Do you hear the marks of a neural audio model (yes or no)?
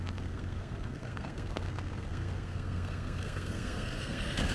yes